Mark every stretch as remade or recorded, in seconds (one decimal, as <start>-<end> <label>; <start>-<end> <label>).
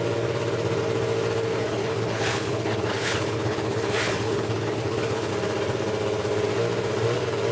0.0-1.5 recorded; 1.5-5.3 remade; 5.3-7.5 recorded